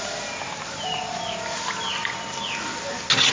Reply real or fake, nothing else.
real